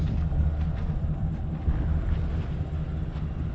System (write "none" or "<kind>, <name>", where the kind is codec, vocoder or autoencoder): none